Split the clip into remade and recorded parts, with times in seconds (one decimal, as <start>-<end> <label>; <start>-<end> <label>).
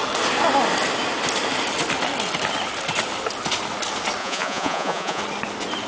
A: 0.0-4.2 recorded; 4.2-5.2 remade; 5.2-5.9 recorded